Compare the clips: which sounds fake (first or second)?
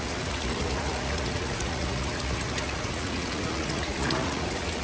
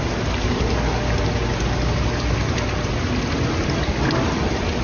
first